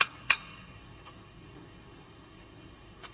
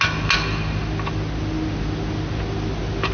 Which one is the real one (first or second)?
second